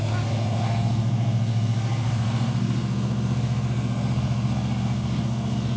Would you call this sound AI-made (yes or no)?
yes